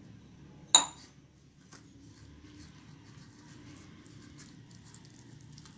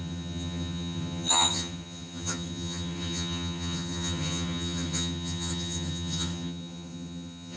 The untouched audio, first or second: first